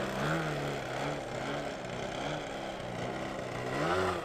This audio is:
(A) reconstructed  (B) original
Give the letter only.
B